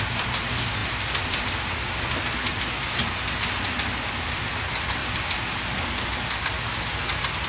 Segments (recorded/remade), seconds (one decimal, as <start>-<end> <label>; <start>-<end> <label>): 0.0-7.5 recorded